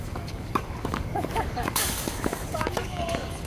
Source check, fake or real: fake